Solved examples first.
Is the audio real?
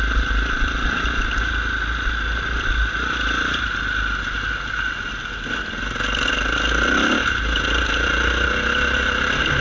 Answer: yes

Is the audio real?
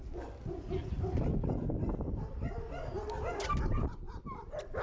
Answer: yes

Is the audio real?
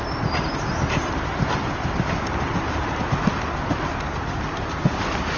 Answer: yes